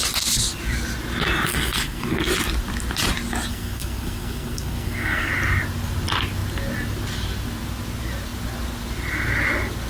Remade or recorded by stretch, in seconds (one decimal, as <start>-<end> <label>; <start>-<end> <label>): 0.0-1.5 recorded; 1.5-2.3 remade; 2.3-3.5 recorded; 3.5-5.3 remade; 5.3-9.9 recorded